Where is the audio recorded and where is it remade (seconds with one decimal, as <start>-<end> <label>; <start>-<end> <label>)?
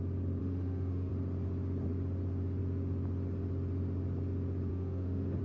0.0-0.4 recorded; 0.4-1.1 remade; 1.1-4.7 recorded; 4.7-5.4 remade